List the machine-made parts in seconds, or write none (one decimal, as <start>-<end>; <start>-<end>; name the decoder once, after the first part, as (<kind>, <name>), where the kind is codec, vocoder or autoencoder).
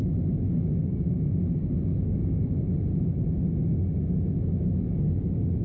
0.8-1.4 (codec, DAC); 1.9-2.6